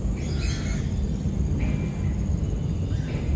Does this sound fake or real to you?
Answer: real